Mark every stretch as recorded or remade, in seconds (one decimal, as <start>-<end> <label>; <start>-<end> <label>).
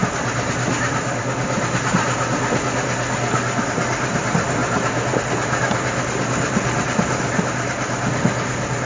0.0-1.2 remade; 1.2-4.6 recorded; 4.6-5.2 remade; 5.2-8.9 recorded